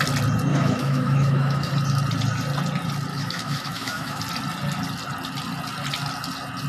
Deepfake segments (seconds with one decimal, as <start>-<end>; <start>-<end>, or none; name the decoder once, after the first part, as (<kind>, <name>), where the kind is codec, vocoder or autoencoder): 0.5-1.7 (autoencoder, DAC-VAE); 3.1-4.2